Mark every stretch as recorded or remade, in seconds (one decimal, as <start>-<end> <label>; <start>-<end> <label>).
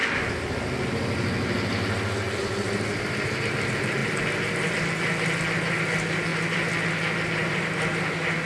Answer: 0.0-8.5 recorded